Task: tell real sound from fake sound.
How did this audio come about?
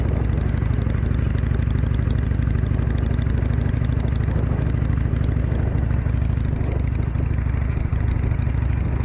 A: real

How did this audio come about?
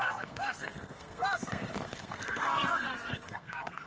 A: fake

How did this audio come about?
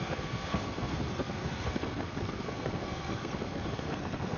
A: fake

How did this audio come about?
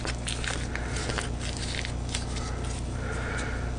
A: real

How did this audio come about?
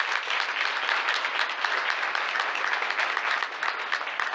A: real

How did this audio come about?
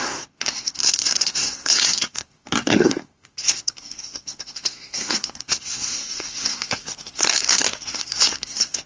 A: fake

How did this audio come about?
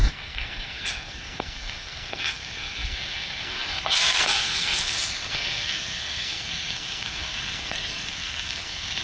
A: fake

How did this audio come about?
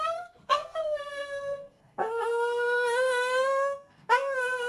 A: fake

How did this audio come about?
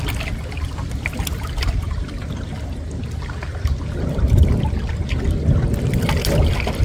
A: real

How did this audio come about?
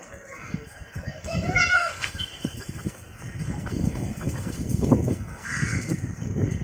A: fake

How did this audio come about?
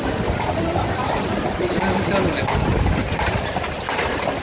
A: real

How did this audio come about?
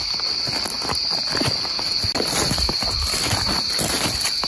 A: real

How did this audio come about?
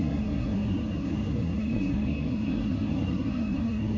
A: fake